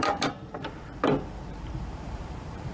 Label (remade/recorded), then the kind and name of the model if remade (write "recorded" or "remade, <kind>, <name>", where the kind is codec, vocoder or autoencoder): remade, vocoder, BigVGAN v2